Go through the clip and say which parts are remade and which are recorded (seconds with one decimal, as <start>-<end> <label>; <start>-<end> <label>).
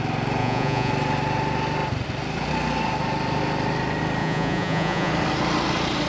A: 0.0-0.4 recorded; 0.4-0.9 remade; 0.9-4.2 recorded; 4.2-5.1 remade; 5.1-6.1 recorded